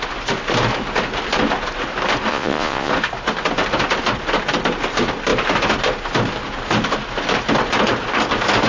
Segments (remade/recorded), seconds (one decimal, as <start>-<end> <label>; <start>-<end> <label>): 0.0-2.3 recorded; 2.3-2.9 remade; 2.9-8.7 recorded